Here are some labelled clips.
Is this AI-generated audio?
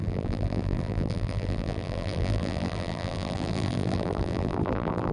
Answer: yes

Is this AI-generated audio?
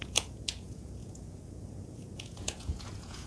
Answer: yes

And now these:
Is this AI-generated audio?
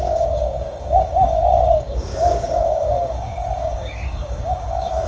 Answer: yes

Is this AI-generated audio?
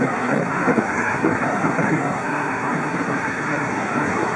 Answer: yes